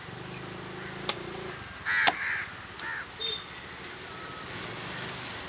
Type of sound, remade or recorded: recorded